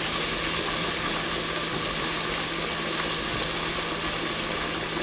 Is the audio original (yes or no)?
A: yes